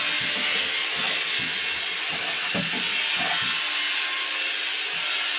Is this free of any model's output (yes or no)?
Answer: yes